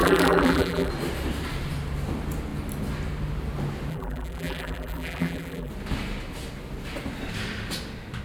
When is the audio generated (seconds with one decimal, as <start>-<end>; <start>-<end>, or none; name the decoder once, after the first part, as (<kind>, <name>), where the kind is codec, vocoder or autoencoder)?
0.0-0.9 (vocoder, BigVGAN v2); 3.9-5.7